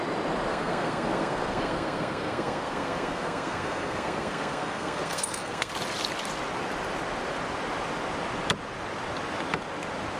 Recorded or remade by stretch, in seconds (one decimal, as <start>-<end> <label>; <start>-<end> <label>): 0.0-0.5 recorded; 0.5-5.7 remade; 5.7-10.2 recorded

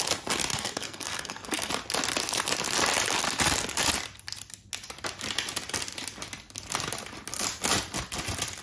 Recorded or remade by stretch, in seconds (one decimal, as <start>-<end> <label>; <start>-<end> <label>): 0.0-0.5 recorded; 0.5-1.7 remade; 1.7-8.6 recorded

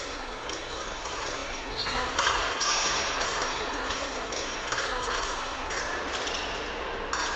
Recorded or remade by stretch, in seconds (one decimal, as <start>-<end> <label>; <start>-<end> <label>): 0.0-5.8 remade; 5.8-7.4 recorded

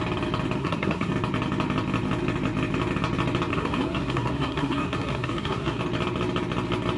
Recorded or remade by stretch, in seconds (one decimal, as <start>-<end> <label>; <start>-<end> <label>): 0.0-0.6 recorded; 0.6-1.1 remade; 1.1-3.5 recorded; 3.5-5.8 remade; 5.8-7.0 recorded